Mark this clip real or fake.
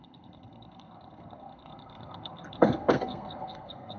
fake